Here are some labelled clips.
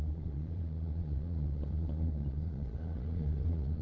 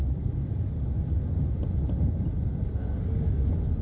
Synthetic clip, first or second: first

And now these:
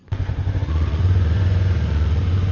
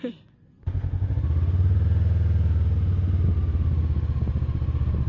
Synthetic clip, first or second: first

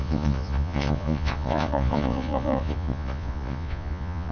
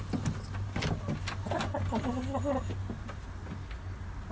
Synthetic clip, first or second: first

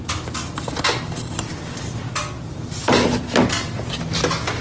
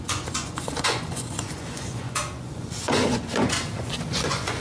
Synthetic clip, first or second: second